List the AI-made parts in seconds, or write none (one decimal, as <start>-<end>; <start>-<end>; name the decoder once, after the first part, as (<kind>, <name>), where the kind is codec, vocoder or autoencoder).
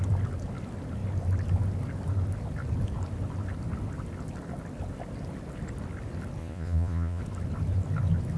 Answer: 6.4-7.2 (vocoder, Vocos)